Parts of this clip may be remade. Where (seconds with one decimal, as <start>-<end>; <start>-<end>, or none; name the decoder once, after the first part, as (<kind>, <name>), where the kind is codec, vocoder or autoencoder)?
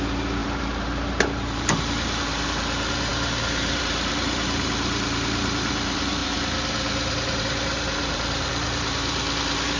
0.0-9.8 (vocoder, BigVGAN v2)